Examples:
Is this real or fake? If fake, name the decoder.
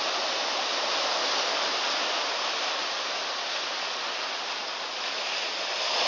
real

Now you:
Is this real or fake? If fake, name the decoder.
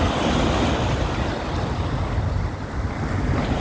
real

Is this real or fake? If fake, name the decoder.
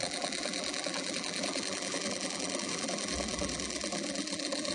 fake, vocoder, BigVGAN v2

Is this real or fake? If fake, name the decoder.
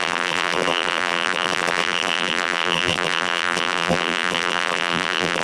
fake, vocoder, BigVGAN v2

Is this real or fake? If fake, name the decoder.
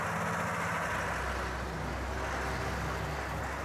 real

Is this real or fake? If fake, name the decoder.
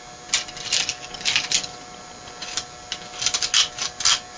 real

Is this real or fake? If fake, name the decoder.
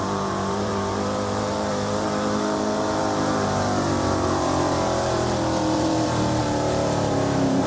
fake, vocoder, BigVGAN v2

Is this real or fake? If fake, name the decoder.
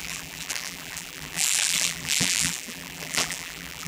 fake, vocoder, BigVGAN v2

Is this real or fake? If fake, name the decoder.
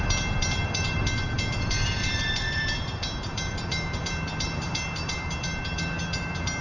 fake, vocoder, BigVGAN v2